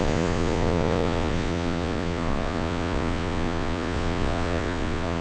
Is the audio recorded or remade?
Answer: remade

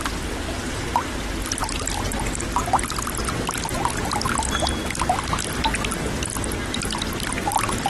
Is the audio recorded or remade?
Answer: recorded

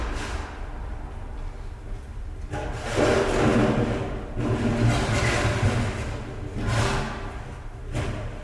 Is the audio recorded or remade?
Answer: recorded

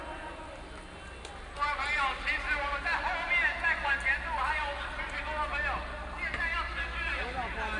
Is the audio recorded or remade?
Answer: recorded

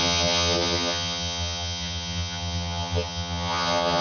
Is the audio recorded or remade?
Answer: remade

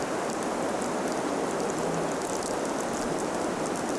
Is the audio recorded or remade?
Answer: recorded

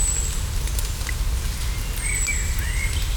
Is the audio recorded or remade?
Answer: recorded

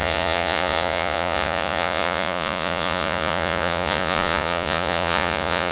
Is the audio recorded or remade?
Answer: remade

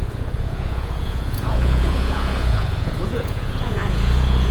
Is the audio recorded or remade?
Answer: remade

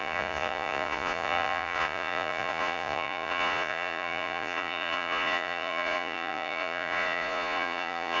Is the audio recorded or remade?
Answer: remade